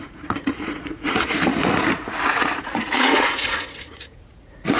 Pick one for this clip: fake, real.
fake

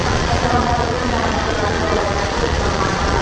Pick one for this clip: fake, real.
fake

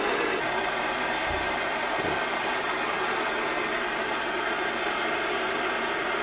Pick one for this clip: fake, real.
real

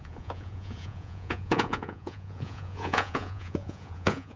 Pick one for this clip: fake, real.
fake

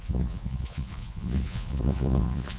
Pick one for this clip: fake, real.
fake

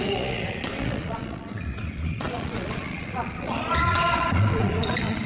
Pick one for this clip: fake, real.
fake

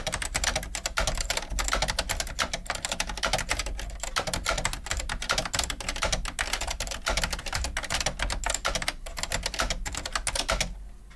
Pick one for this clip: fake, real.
real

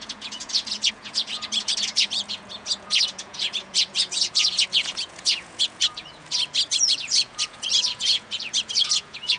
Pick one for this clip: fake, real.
fake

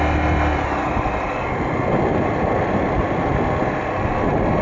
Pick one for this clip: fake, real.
real